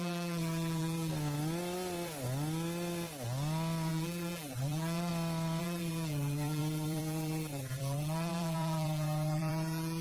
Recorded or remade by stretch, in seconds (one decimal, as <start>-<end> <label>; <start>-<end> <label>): 0.0-1.1 remade; 1.1-3.9 recorded; 3.9-5.1 remade; 5.1-5.6 recorded; 5.6-10.0 remade